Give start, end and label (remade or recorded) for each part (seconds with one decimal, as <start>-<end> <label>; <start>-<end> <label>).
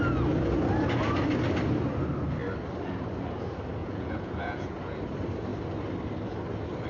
0.0-3.8 recorded; 3.8-5.0 remade; 5.0-6.9 recorded